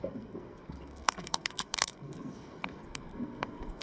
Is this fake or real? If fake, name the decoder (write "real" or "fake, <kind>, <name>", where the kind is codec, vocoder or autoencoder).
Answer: fake, codec, SNAC